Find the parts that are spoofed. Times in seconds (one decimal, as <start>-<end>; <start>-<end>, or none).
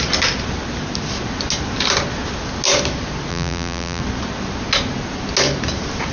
3.3-4.0